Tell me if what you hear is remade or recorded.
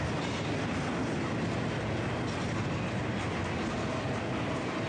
recorded